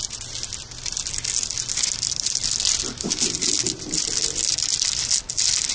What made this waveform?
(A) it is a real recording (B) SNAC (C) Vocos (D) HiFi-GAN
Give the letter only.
A